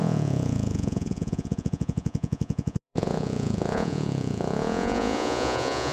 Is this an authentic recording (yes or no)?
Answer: no